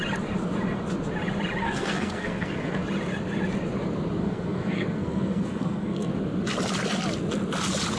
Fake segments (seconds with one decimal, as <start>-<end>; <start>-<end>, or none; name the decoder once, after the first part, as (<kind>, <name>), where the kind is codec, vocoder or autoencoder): 1.6-2.8 (codec, SNAC); 4.2-6.1